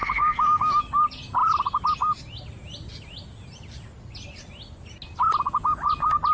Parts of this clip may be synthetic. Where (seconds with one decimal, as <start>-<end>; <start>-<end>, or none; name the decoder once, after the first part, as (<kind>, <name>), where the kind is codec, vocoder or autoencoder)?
0.0-0.8 (autoencoder, DAC-VAE)